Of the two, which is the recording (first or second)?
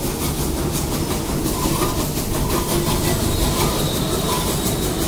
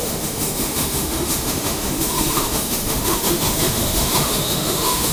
first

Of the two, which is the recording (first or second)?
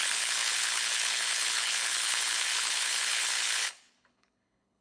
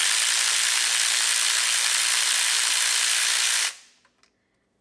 second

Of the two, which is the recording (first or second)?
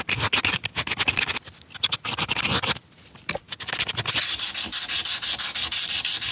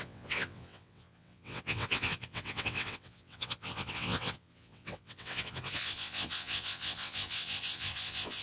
first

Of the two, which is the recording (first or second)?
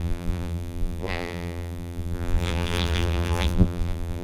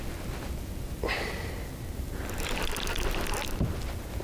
second